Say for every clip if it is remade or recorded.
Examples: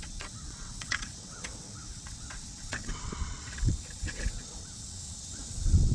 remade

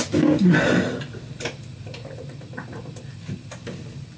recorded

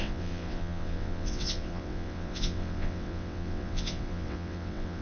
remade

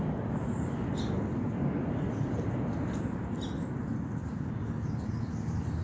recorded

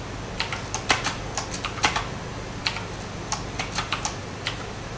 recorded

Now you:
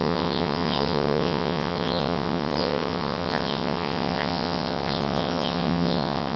remade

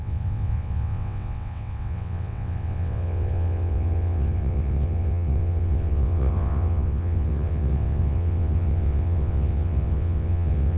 remade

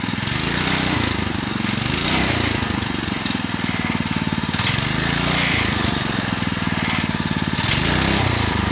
recorded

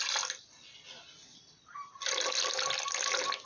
recorded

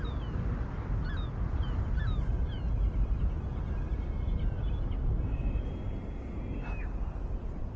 recorded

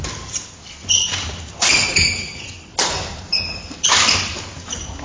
recorded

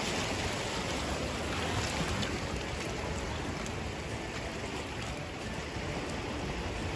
recorded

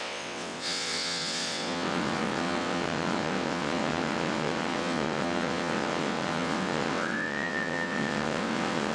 remade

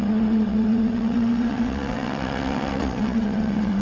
remade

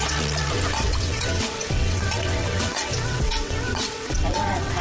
remade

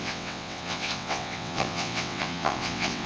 remade